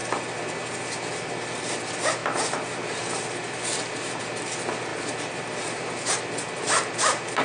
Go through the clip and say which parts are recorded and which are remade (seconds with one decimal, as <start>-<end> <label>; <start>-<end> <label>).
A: 0.0-2.2 recorded; 2.2-4.2 remade; 4.2-4.9 recorded; 4.9-5.9 remade; 5.9-7.4 recorded